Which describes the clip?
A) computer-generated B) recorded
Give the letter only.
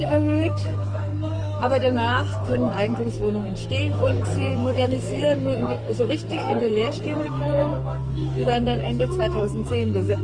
A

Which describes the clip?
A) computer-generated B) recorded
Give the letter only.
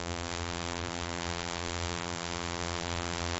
A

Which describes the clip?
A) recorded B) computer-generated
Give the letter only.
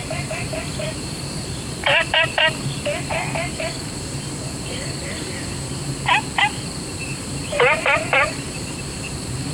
B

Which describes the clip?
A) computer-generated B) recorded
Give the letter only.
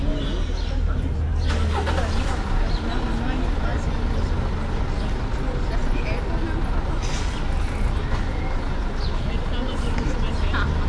B